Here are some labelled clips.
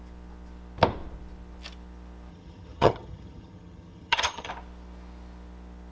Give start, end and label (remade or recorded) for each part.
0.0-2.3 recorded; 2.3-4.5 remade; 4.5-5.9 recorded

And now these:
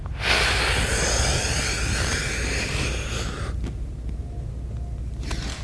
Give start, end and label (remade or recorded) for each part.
0.0-5.6 recorded